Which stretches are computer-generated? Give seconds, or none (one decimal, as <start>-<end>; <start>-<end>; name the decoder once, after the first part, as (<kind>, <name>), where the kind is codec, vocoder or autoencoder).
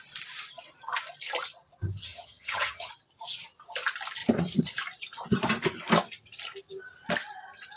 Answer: 2.0-2.9 (vocoder, HiFi-GAN)